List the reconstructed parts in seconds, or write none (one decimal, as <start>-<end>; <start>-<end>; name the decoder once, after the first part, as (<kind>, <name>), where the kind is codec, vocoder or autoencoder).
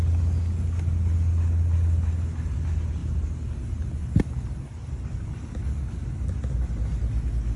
none